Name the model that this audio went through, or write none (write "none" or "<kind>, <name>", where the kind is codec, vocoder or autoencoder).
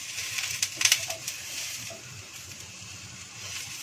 vocoder, BigVGAN v2